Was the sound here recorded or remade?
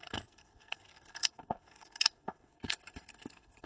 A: remade